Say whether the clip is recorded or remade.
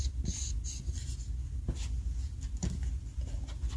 recorded